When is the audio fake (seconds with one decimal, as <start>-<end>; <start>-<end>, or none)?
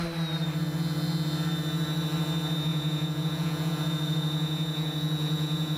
2.7-5.8